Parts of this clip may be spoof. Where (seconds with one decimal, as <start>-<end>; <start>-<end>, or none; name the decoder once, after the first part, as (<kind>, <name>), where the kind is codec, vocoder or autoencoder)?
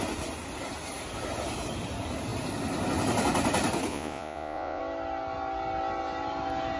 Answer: 3.9-4.8 (vocoder, Vocos)